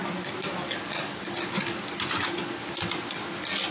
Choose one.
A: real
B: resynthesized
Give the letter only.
A